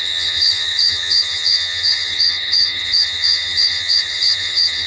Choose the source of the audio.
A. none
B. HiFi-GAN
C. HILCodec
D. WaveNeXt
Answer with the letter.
B